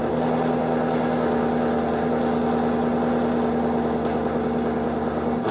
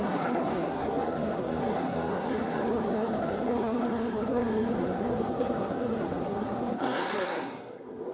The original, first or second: first